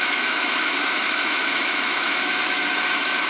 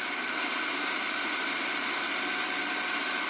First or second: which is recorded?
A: second